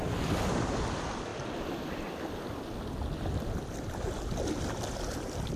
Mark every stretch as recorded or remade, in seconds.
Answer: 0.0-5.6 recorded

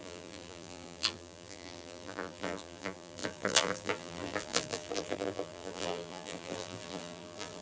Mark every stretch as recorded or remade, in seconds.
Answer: 0.0-7.6 remade

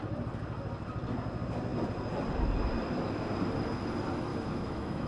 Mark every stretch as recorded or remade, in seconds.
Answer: 0.0-4.3 recorded; 4.3-5.1 remade

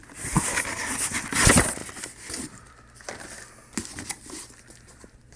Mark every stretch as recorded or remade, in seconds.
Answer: 0.0-5.4 recorded

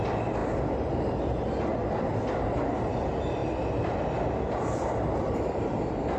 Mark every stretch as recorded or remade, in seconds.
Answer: 0.0-3.4 recorded; 3.4-6.2 remade

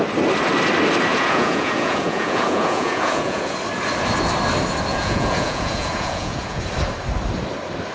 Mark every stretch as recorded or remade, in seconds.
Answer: 0.0-1.1 recorded; 1.1-3.6 remade; 3.6-4.9 recorded; 4.9-6.6 remade; 6.6-7.9 recorded

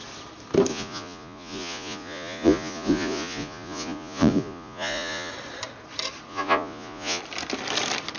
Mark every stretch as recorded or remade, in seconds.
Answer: 0.0-0.7 recorded; 0.7-5.3 remade; 5.3-6.3 recorded; 6.3-7.2 remade; 7.2-8.2 recorded